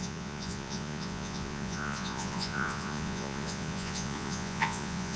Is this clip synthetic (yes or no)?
yes